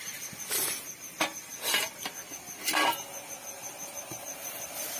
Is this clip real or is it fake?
real